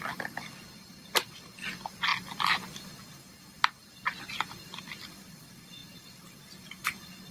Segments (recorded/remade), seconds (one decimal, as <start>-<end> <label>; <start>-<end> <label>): 0.0-5.8 recorded; 5.8-6.7 remade; 6.7-7.3 recorded